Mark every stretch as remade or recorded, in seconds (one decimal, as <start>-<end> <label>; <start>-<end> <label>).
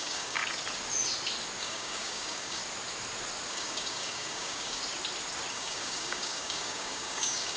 0.0-0.4 remade; 0.4-1.6 recorded; 1.6-2.6 remade; 2.6-3.5 recorded; 3.5-4.8 remade; 4.8-5.5 recorded; 5.5-7.6 remade